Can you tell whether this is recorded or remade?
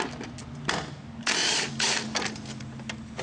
recorded